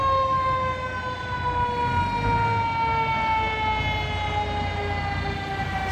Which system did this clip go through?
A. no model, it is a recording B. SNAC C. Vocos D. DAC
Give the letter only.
A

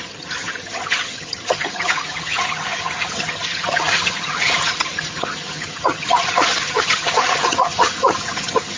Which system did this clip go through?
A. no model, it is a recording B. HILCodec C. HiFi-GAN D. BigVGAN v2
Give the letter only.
C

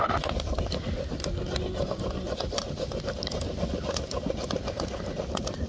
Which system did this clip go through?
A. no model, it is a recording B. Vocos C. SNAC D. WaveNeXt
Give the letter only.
A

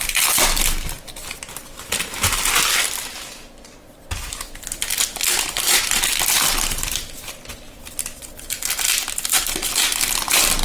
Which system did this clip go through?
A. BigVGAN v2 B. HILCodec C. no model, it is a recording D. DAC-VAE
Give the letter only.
C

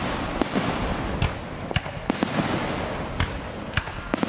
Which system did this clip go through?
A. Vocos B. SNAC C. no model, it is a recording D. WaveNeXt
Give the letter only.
C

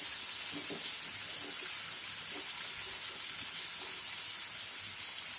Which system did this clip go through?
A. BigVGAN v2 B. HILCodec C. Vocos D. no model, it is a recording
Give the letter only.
D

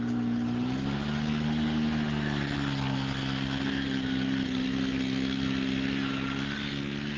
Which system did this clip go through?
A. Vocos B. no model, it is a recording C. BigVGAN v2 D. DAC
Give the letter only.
B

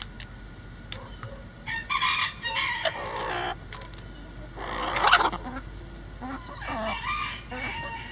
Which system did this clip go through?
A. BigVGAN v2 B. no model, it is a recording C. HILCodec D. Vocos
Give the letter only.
B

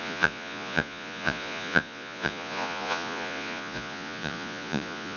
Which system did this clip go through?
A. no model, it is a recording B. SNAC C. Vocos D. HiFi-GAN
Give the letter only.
C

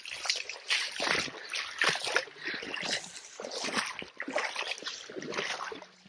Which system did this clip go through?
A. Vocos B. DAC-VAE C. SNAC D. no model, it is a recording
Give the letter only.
D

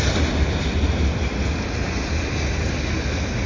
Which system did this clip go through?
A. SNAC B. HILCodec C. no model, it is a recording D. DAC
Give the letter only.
C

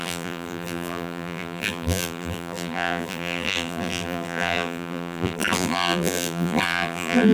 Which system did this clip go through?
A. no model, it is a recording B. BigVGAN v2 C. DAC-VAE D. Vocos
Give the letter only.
B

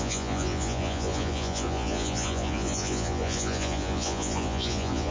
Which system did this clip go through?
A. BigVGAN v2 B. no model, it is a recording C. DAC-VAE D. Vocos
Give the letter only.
D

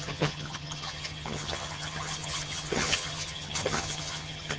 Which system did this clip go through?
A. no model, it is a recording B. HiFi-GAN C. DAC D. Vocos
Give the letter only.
B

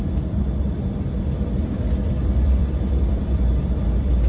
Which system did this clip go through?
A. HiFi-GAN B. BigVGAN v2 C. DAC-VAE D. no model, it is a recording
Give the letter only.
B